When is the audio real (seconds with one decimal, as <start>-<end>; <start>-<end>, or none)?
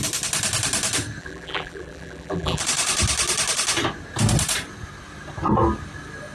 0.0-1.2; 2.6-6.3